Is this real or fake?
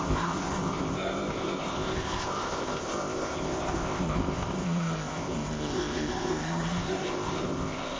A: fake